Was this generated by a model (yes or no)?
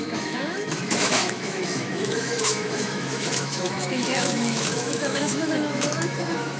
yes